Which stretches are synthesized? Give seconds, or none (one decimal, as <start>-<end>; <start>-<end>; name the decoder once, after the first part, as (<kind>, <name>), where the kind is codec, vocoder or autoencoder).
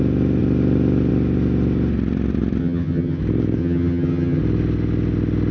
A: 2.6-3.2 (vocoder, HiFi-GAN); 3.6-4.4